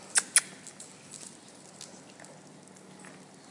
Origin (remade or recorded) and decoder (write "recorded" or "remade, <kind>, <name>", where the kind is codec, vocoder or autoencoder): recorded